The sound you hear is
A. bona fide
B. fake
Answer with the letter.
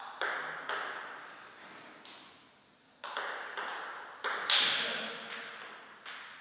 A